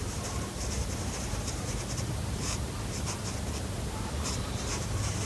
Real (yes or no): no